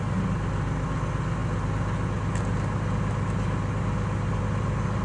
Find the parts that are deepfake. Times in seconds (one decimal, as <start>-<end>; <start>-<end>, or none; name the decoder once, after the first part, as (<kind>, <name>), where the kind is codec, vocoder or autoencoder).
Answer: none